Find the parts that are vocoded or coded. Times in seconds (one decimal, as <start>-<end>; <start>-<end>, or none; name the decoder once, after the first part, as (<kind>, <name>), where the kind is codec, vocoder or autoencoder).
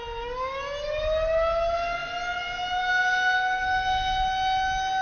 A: none